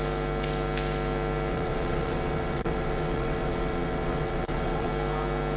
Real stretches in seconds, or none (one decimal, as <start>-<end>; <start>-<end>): 0.0-1.5; 4.9-5.6